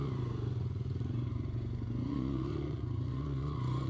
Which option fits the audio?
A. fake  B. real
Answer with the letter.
A